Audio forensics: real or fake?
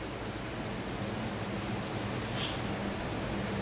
real